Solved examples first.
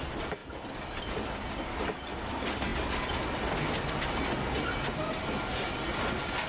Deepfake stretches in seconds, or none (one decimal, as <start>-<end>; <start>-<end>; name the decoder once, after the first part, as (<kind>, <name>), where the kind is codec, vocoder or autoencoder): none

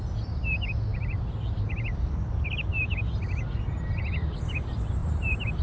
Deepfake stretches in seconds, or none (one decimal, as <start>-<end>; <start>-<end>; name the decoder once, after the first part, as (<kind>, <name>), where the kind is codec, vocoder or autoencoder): 5.0-5.6 (vocoder, BigVGAN v2)

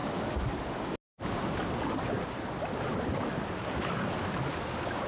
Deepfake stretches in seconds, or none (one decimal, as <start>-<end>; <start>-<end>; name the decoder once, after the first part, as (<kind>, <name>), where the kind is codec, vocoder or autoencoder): none

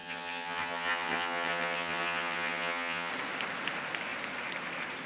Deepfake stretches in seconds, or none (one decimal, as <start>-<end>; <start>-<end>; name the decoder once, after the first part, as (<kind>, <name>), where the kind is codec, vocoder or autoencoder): 0.0-3.1 (vocoder, HiFi-GAN)

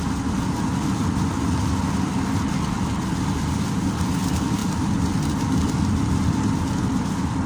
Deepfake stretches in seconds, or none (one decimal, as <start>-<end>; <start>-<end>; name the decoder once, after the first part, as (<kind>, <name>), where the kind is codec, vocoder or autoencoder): none